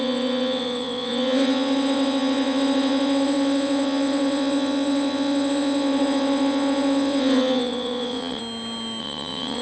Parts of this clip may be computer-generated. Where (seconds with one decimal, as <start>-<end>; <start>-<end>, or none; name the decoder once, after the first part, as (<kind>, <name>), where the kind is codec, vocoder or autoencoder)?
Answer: 0.0-8.4 (vocoder, WaveNeXt); 9.0-9.6